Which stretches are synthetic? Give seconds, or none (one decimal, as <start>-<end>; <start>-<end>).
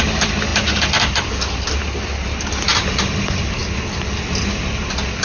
none